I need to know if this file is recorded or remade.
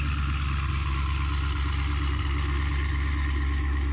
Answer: recorded